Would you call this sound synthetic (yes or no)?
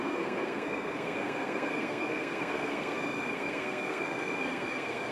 yes